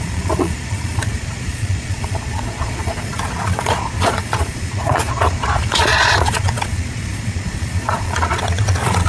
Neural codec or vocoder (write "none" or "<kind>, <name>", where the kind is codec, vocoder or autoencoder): vocoder, Vocos